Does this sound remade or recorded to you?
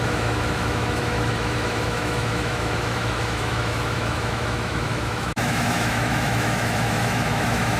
remade